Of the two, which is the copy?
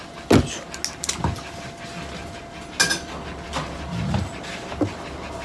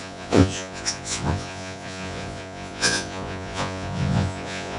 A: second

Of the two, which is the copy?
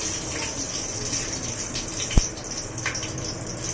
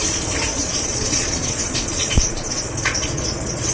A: second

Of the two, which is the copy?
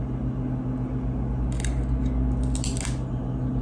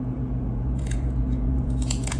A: second